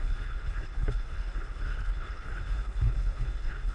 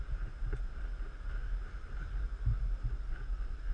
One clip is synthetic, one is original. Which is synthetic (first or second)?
first